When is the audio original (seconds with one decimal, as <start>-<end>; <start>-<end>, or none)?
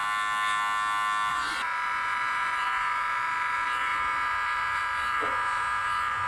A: 0.0-1.3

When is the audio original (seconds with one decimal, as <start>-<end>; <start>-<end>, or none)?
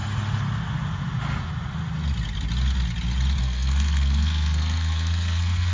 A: 0.0-3.4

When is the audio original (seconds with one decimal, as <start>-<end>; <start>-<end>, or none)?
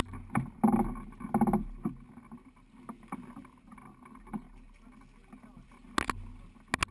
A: 0.0-6.9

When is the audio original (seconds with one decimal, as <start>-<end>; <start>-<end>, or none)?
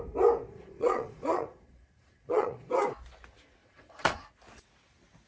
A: 0.0-0.5; 2.7-3.6; 4.2-5.3